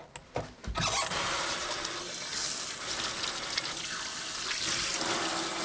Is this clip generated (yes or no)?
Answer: no